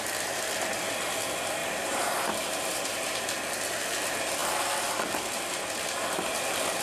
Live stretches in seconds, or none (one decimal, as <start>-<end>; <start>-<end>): 0.0-1.6; 3.2-6.8